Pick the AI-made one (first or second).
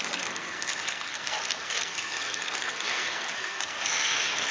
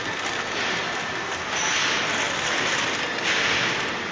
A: first